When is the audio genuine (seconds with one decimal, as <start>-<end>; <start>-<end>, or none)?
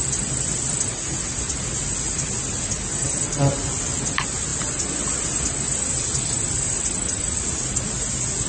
0.0-8.5